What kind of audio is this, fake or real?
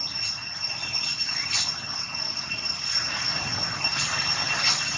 real